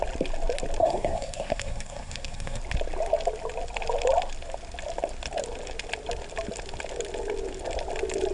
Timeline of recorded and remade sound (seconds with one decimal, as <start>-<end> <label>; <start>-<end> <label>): 0.0-0.8 recorded; 0.8-2.6 remade; 2.6-8.3 recorded